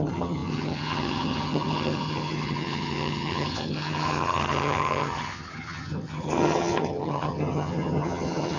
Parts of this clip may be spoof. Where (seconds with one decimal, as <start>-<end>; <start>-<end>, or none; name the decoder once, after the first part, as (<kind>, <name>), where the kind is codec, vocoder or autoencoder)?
0.0-8.6 (vocoder, HiFi-GAN)